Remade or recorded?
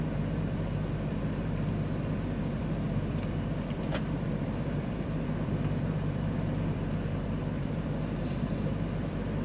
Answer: remade